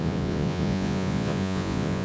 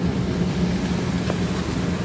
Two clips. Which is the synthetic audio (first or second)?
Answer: first